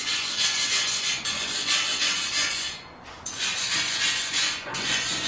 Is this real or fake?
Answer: fake